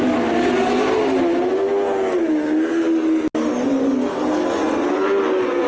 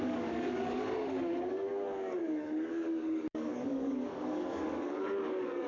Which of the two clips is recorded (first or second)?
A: first